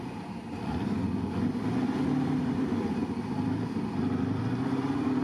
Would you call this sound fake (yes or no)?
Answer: yes